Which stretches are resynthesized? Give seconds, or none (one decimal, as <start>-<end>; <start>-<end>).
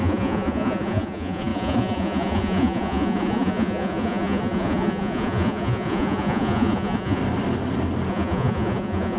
0.0-7.2; 8.1-9.2